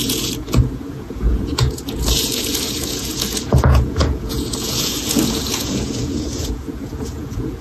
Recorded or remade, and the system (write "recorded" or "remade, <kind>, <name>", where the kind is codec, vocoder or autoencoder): remade, vocoder, Vocos